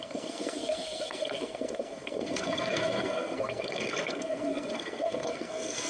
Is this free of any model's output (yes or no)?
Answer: no